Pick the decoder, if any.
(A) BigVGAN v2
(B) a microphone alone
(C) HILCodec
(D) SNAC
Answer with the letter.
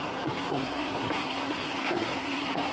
D